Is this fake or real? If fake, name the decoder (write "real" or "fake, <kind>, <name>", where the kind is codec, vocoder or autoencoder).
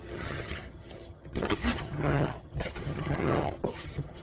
fake, vocoder, HiFi-GAN